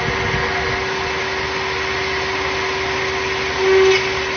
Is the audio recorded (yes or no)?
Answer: yes